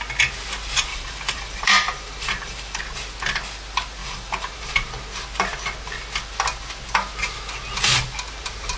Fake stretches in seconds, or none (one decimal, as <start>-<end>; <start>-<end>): 0.9-2.8; 4.0-4.7